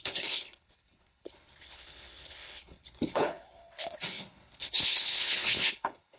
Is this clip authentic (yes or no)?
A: no